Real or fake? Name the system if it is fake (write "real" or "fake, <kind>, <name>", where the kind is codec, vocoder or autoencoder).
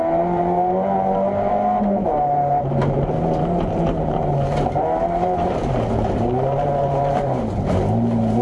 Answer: fake, vocoder, BigVGAN v2